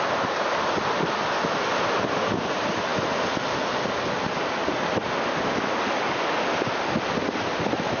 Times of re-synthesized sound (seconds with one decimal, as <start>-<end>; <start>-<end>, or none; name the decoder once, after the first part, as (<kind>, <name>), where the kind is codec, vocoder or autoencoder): none